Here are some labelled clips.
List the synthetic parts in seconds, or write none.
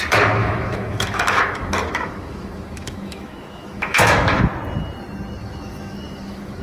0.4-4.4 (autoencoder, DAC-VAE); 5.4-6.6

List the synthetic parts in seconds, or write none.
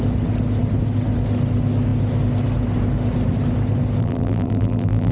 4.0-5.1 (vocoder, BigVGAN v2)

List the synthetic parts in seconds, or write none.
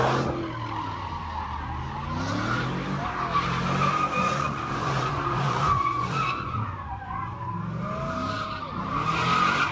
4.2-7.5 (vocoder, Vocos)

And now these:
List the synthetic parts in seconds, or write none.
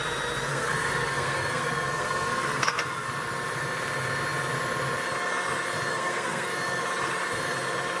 0.5-3.1 (codec, SNAC); 5.9-6.8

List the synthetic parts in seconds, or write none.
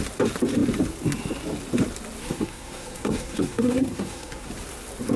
2.2-4.5 (codec, SNAC)